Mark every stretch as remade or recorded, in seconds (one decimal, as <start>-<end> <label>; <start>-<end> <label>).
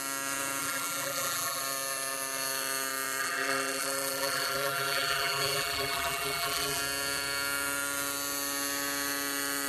0.0-0.6 recorded; 0.6-1.6 remade; 1.6-3.2 recorded; 3.2-6.8 remade; 6.8-9.7 recorded